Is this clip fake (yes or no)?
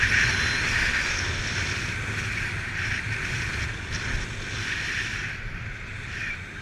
no